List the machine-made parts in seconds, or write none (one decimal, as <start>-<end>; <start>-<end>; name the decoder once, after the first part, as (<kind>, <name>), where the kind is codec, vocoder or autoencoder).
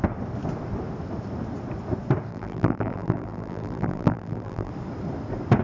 2.3-4.7 (vocoder, BigVGAN v2)